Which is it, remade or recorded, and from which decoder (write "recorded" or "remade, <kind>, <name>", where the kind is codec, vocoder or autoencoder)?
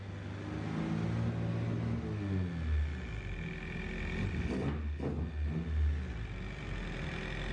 recorded